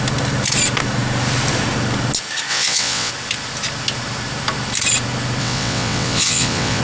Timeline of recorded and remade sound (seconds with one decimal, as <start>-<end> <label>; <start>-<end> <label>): 0.0-2.5 recorded; 2.5-3.1 remade; 3.1-5.4 recorded; 5.4-6.8 remade